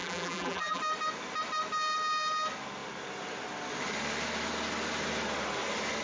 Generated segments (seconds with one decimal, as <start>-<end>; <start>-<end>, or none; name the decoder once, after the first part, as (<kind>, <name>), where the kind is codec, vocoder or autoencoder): 0.0-0.8 (vocoder, BigVGAN v2)